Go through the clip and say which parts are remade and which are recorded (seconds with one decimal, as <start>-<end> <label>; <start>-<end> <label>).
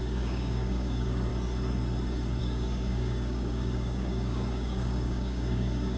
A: 0.0-1.3 remade; 1.3-2.4 recorded; 2.4-6.0 remade